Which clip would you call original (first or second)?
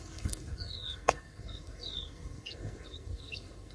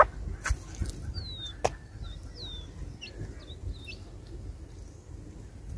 second